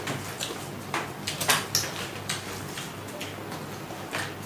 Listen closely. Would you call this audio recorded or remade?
recorded